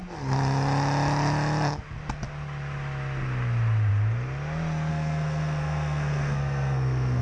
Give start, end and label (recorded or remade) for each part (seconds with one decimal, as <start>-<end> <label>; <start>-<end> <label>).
0.0-4.9 recorded; 4.9-7.2 remade